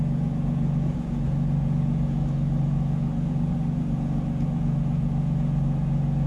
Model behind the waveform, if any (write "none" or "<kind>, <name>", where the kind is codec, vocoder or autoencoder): vocoder, Vocos